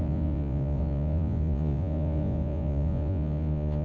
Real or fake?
fake